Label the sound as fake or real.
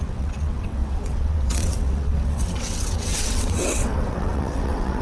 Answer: fake